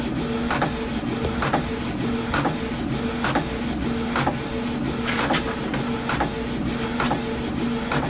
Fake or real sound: real